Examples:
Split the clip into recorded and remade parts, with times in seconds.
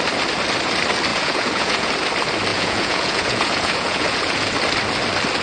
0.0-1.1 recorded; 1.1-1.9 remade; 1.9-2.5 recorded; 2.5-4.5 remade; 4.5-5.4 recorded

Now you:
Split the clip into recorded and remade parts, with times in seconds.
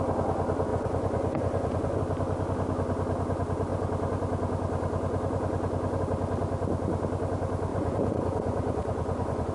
0.0-0.7 recorded; 0.7-2.0 remade; 2.0-7.7 recorded; 7.7-9.5 remade